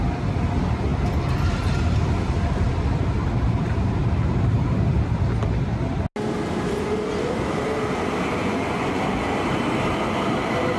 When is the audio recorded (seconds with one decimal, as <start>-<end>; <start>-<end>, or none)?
0.0-8.4; 9.0-10.8